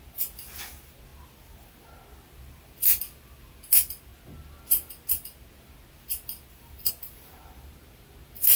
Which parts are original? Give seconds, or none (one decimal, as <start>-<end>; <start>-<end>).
0.0-8.6